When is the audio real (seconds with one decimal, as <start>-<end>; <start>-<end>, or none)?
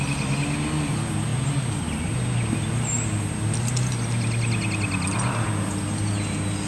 0.0-6.7